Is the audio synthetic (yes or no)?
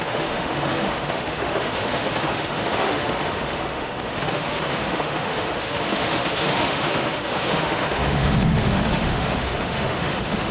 yes